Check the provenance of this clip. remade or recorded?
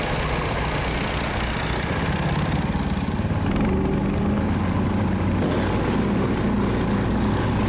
recorded